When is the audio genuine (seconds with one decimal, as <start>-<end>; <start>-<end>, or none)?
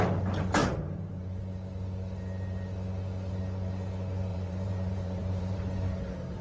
0.0-0.6; 1.4-4.3; 5.6-6.4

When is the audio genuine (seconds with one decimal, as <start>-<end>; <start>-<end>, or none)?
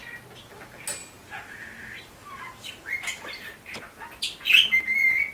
0.0-1.0; 4.2-5.3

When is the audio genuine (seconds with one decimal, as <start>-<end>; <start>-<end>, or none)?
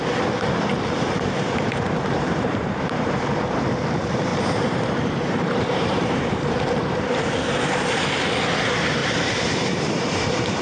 0.0-0.7; 3.2-4.3; 7.2-9.0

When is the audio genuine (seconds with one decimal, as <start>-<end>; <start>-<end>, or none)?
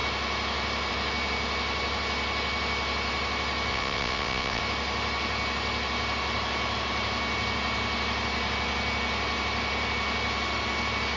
0.0-3.7; 4.6-11.2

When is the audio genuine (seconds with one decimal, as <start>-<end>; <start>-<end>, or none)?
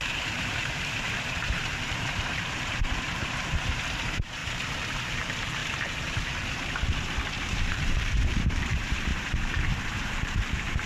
4.4-5.0; 5.6-7.4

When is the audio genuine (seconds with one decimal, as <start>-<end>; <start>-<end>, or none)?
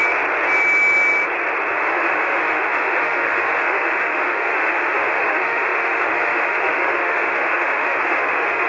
0.0-1.7